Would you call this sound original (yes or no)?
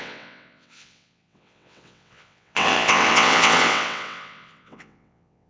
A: no